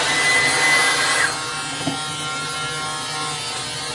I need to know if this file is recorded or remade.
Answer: recorded